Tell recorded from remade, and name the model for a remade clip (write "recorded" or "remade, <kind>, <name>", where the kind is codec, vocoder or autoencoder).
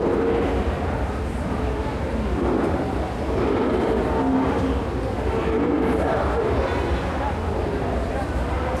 recorded